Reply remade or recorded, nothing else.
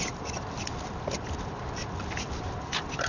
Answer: recorded